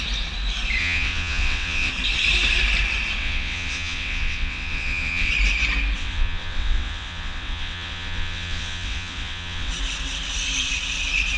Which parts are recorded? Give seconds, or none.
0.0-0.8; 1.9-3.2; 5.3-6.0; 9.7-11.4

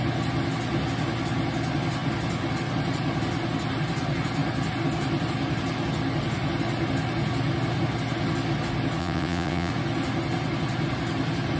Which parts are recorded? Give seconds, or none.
0.0-9.0; 9.7-11.6